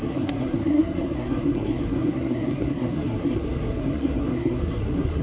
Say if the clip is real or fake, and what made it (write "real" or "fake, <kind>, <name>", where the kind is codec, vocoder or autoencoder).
fake, codec, SNAC